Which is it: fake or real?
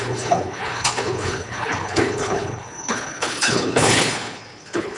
fake